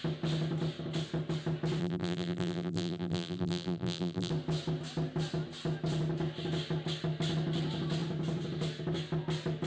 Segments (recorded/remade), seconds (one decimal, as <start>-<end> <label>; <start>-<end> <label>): 0.0-1.8 recorded; 1.8-4.3 remade; 4.3-9.7 recorded